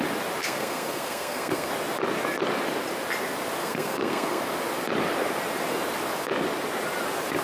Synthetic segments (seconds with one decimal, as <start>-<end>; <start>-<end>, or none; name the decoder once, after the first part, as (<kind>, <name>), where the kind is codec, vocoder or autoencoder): 0.4-1.7 (codec, SNAC); 3.6-4.4